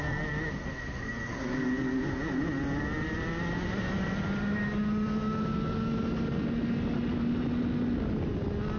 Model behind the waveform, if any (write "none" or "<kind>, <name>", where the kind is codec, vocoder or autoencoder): none